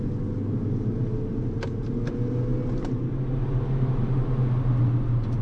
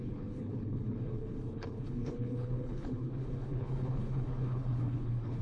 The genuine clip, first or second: first